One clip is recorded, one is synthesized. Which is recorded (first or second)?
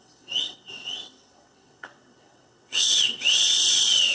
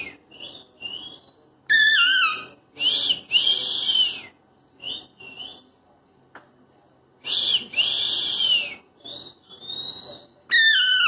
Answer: second